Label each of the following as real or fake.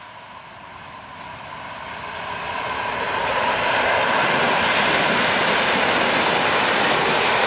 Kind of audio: real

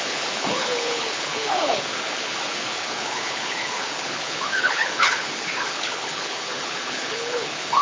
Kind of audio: fake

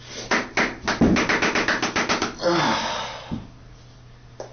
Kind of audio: real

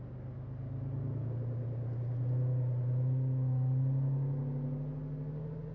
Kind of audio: real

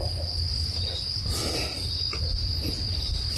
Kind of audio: real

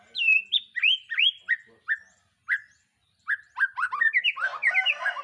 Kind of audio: real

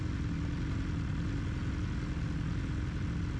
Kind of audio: real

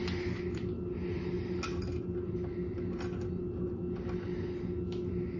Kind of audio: real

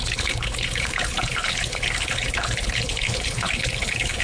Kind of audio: fake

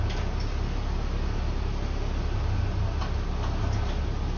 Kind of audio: real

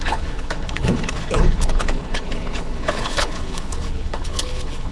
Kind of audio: fake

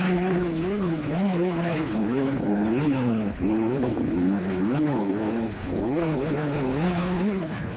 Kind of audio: fake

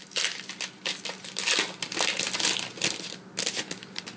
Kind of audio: real